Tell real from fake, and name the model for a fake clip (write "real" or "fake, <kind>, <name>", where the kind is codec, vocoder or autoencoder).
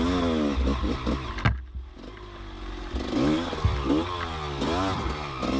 real